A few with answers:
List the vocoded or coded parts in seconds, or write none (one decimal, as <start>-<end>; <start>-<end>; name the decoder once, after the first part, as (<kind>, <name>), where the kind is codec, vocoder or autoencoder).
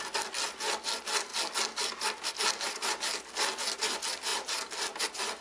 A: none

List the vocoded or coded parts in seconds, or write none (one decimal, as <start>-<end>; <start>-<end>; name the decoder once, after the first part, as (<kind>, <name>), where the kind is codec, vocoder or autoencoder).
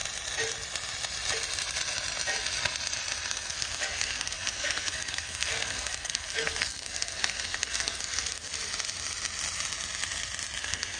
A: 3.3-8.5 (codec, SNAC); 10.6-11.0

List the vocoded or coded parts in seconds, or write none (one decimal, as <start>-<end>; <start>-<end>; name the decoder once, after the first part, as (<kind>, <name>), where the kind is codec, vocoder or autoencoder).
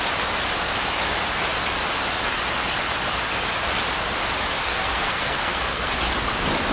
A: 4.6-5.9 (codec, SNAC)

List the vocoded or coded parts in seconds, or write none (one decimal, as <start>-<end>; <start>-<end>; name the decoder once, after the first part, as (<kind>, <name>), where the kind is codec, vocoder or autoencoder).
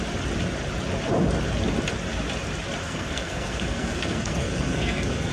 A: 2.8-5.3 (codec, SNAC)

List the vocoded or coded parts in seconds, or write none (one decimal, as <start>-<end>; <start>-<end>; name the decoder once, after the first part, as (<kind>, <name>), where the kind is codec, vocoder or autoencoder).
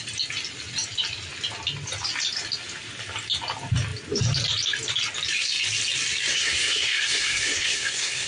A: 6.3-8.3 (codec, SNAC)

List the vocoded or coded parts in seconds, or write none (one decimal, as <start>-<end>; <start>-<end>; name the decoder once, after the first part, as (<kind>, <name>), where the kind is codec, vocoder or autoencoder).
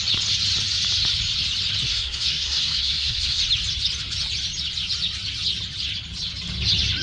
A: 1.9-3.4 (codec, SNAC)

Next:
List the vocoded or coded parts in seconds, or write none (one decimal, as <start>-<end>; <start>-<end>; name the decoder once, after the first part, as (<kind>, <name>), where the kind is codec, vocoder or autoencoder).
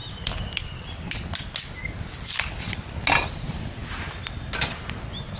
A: none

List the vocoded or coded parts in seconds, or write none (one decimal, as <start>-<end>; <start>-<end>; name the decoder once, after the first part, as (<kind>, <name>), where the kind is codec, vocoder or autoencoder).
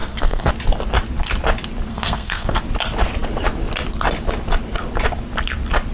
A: 0.0-0.5 (codec, SNAC); 1.9-2.6